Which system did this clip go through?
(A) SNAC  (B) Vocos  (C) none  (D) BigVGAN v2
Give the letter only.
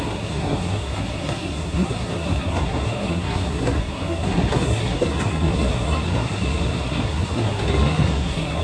A